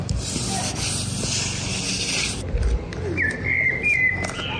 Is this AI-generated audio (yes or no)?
no